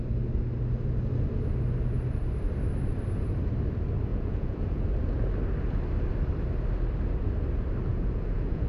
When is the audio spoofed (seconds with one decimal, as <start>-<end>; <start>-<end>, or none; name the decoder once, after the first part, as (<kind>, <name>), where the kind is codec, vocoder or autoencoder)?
4.1-4.9 (vocoder, Vocos); 7.9-8.7